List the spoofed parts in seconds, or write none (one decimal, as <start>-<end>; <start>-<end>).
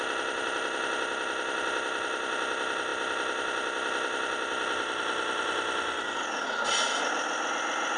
none